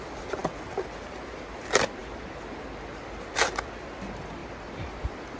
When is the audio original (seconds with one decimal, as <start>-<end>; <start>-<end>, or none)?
0.0-5.4